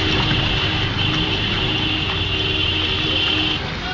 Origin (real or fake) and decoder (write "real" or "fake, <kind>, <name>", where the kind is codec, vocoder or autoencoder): real